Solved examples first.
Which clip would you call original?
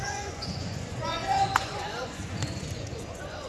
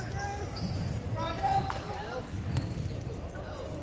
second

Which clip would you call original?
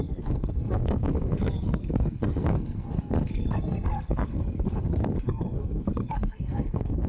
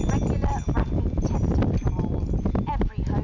second